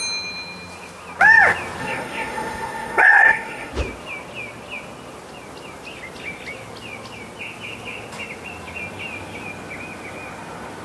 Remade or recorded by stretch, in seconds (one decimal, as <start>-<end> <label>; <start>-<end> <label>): 0.0-1.8 recorded; 1.8-3.7 remade; 3.7-10.8 recorded